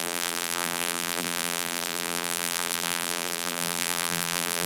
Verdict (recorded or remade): remade